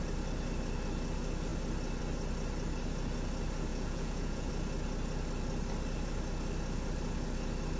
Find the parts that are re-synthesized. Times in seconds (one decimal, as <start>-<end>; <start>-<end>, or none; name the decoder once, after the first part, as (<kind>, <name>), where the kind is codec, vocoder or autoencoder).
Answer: 3.7-4.5 (vocoder, Vocos)